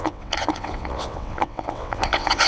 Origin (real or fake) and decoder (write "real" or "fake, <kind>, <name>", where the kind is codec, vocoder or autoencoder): fake, vocoder, WaveNeXt